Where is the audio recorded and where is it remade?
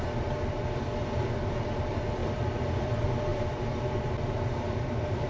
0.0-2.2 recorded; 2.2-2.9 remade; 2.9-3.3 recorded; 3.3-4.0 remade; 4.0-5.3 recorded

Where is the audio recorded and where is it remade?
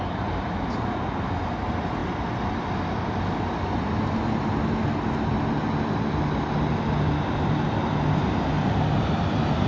0.0-9.7 recorded